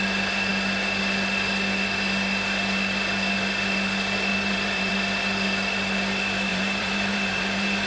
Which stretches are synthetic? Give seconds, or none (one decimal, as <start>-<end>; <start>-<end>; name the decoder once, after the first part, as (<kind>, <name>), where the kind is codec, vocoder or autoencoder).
4.3-4.9 (vocoder, BigVGAN v2); 6.5-7.9